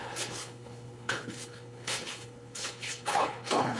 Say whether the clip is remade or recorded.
remade